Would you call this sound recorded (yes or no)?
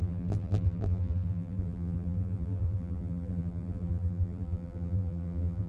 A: no